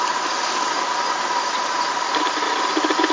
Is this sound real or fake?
real